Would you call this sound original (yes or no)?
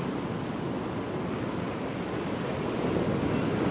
yes